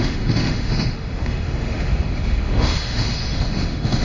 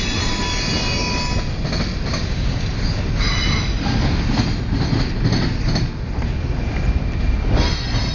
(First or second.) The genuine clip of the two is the second